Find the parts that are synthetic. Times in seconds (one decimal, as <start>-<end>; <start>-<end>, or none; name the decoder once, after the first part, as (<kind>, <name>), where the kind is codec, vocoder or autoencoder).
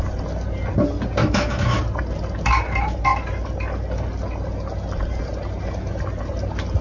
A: 1.2-1.8 (autoencoder, DAC-VAE)